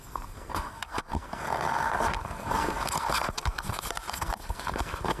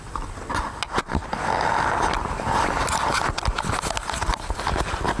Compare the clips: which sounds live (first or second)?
second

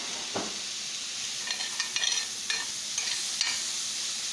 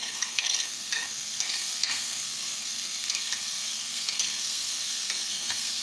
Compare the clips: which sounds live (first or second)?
first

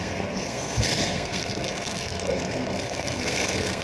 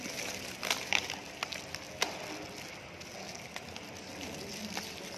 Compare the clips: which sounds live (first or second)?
second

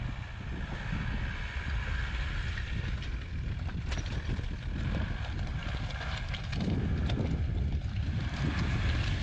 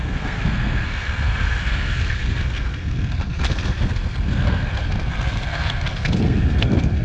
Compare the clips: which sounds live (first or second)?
first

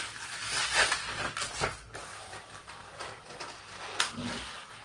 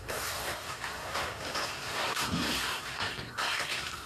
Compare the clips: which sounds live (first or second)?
first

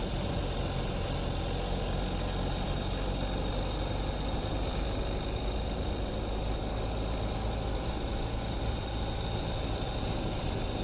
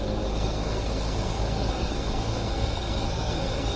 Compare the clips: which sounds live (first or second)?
first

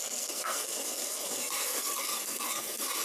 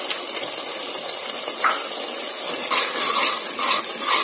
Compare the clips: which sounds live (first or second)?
second